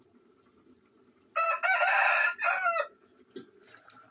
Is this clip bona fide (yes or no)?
yes